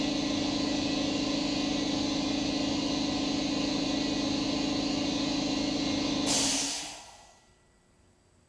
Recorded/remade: recorded